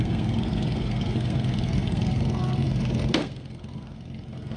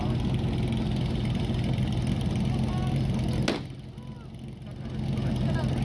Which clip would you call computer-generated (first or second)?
first